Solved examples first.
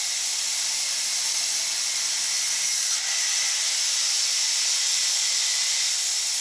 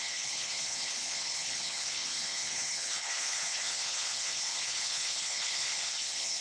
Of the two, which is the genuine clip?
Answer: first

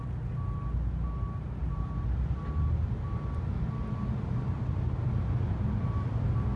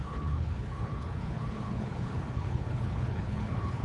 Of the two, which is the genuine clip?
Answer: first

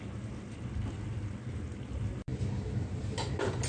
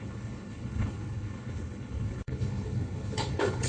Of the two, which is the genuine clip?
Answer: first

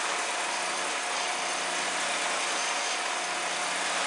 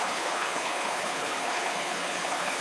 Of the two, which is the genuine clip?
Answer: first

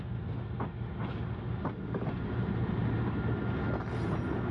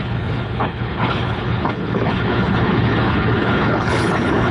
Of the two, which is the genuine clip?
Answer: first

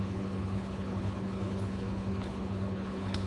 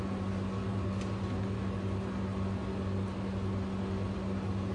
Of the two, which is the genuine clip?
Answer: second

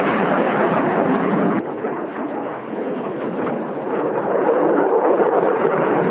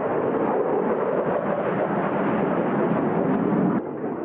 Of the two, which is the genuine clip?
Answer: second